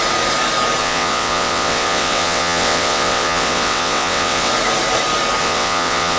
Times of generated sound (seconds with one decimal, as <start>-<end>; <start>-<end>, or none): 0.8-4.5; 5.4-6.2